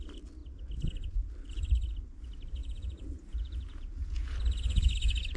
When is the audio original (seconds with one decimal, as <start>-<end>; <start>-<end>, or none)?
0.0-2.6; 4.4-5.4